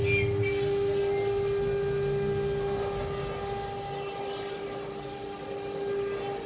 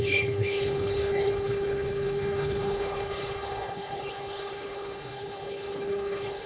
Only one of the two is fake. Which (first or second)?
second